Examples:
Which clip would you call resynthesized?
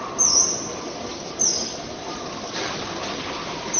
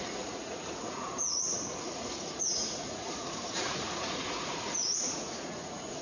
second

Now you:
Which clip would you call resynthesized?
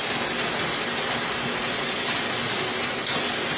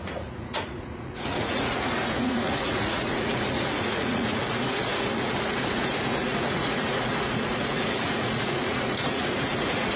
second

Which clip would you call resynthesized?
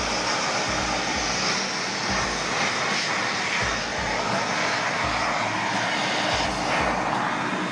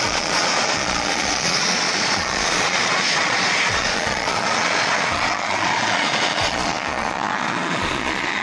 second